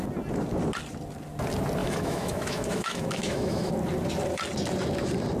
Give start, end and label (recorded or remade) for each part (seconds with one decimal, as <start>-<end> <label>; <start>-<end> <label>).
0.0-1.8 recorded; 1.8-3.7 remade; 3.7-5.4 recorded